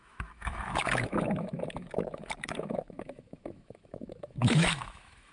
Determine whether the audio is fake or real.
fake